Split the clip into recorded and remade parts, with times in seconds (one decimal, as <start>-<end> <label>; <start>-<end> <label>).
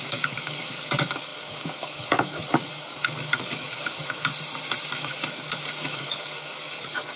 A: 0.0-4.3 remade; 4.3-5.0 recorded; 5.0-7.2 remade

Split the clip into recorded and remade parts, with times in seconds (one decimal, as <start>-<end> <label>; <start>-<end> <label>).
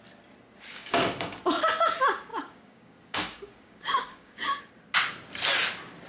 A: 0.0-0.7 recorded; 0.7-1.4 remade; 1.4-2.3 recorded; 2.3-4.6 remade; 4.6-6.1 recorded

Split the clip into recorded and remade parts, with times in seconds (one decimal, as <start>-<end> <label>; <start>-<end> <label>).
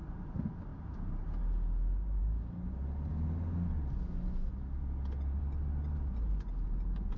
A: 0.0-7.2 recorded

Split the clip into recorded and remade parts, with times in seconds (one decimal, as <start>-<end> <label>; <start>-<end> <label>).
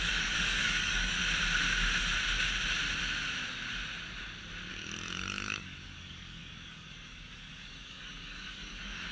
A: 0.0-1.2 remade; 1.2-4.7 recorded; 4.7-9.1 remade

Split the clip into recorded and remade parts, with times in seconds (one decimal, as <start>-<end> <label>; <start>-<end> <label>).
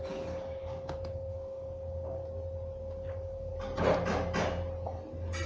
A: 0.0-2.2 remade; 2.2-2.8 recorded; 2.8-3.5 remade; 3.5-5.5 recorded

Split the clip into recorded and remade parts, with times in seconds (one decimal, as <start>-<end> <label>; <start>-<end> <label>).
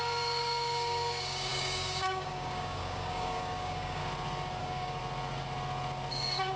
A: 0.0-4.0 remade; 4.0-4.6 recorded; 4.6-5.0 remade; 5.0-6.1 recorded; 6.1-6.6 remade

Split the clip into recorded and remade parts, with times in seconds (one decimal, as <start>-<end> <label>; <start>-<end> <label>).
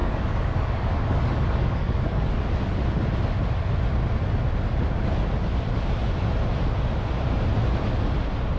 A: 0.0-2.4 remade; 2.4-8.6 recorded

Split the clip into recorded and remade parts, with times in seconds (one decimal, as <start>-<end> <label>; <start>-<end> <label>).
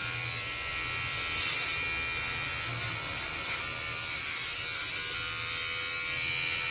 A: 0.0-6.7 recorded